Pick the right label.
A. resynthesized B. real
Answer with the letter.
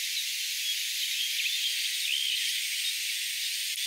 B